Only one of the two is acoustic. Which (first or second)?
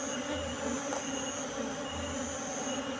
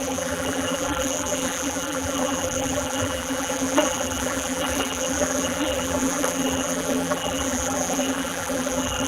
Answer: first